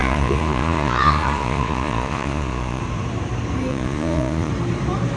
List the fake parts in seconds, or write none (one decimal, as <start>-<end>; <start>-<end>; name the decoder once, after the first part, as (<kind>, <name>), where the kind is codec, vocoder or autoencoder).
0.0-2.8 (vocoder, Vocos); 3.7-4.5